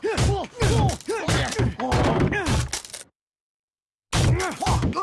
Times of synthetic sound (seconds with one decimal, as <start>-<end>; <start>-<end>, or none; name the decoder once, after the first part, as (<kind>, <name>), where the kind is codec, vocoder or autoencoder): none